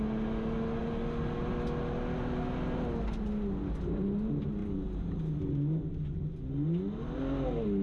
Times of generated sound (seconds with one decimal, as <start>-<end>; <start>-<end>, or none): 4.6-5.5